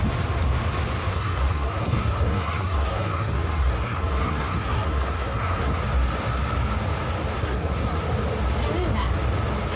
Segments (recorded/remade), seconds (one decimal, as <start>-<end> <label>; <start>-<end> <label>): 0.0-1.1 recorded; 1.1-5.8 remade; 5.8-7.4 recorded; 7.4-8.0 remade; 8.0-9.8 recorded